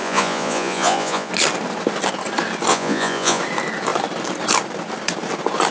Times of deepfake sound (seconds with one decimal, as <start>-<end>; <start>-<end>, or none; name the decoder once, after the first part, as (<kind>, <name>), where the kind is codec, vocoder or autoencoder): 0.0-1.3 (vocoder, Vocos); 2.7-3.4